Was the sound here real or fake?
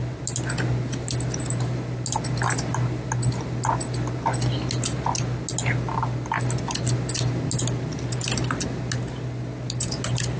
real